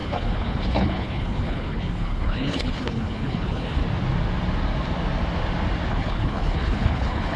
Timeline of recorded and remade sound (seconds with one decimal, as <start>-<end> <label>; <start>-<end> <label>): 0.0-3.8 remade; 3.8-5.9 recorded; 5.9-7.4 remade